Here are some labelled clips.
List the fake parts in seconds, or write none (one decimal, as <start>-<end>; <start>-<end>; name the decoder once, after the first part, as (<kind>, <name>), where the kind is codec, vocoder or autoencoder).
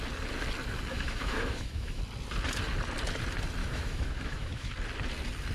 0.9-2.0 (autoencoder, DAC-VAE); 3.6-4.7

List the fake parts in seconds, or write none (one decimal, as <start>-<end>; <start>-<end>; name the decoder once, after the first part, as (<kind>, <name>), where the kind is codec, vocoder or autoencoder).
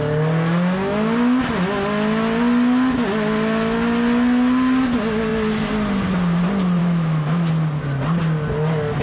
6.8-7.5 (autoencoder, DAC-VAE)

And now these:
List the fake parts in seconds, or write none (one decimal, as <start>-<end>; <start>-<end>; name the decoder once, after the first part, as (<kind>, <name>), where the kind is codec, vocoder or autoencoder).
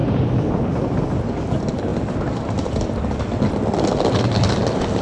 none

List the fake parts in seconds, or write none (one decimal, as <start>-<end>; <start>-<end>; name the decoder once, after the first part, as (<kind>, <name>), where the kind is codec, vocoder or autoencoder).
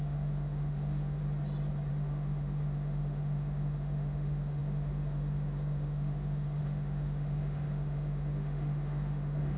0.0-1.2 (autoencoder, DAC-VAE); 1.9-9.6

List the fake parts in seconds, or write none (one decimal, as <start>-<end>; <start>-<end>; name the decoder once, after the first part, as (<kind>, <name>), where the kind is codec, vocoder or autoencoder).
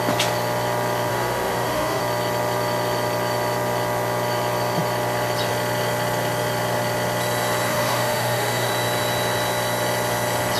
1.1-2.0 (autoencoder, DAC-VAE); 7.7-8.7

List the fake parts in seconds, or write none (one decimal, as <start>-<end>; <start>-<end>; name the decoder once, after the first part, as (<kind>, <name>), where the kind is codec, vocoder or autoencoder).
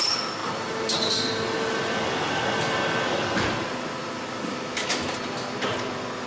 4.5-5.1 (autoencoder, DAC-VAE)